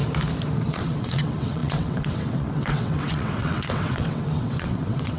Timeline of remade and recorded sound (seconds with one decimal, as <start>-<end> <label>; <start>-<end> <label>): 0.0-0.7 recorded; 0.7-5.2 remade